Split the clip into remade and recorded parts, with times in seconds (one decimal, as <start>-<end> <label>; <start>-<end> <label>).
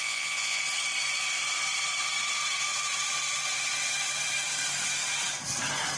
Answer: 0.0-0.6 remade; 0.6-6.0 recorded